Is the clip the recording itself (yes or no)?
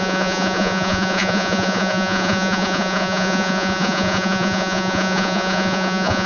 no